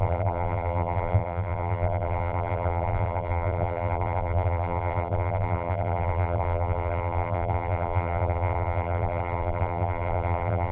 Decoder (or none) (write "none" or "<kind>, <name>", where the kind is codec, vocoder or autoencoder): vocoder, BigVGAN v2